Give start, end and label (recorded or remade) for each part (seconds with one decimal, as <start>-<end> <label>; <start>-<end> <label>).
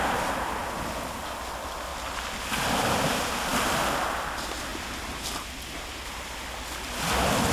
0.0-1.9 recorded; 1.9-2.6 remade; 2.6-4.7 recorded; 4.7-5.6 remade; 5.6-7.5 recorded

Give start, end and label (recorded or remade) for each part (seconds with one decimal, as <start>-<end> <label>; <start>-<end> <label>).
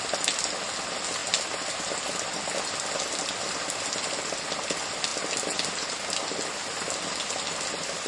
0.0-8.1 recorded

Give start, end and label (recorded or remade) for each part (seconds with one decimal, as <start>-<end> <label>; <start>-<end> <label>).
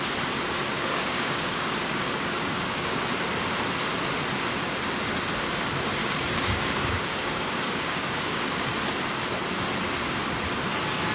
0.0-0.6 recorded; 0.6-3.0 remade; 3.0-6.0 recorded; 6.0-8.7 remade; 8.7-11.1 recorded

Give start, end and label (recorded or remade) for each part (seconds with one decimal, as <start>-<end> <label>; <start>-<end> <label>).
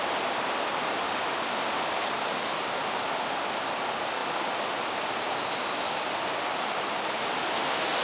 0.0-8.0 recorded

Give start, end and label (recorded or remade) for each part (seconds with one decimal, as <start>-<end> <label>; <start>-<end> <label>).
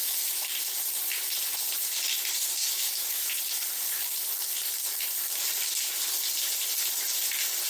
0.0-0.5 remade; 0.5-2.6 recorded; 2.6-3.3 remade; 3.3-7.7 recorded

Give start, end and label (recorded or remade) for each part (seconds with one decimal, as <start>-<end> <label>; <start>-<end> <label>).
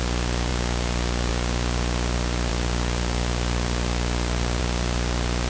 0.0-5.5 recorded